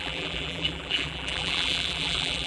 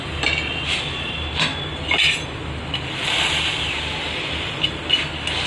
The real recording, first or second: second